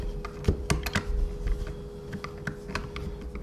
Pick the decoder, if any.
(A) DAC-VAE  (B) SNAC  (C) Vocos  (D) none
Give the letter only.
D